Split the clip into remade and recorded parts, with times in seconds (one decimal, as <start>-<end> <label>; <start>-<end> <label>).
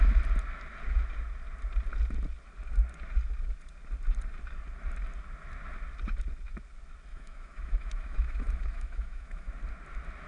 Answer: 0.0-7.1 recorded; 7.1-9.5 remade; 9.5-10.3 recorded